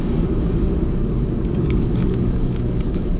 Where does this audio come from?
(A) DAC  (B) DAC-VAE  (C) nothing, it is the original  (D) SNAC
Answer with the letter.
A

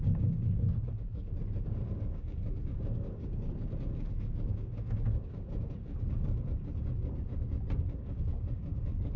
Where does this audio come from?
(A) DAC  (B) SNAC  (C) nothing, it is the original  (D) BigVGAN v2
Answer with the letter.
A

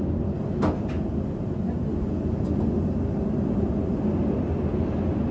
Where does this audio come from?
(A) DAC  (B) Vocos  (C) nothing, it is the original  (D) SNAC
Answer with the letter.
C